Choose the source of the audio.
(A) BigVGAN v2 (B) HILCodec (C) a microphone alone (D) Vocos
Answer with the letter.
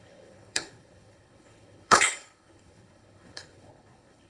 B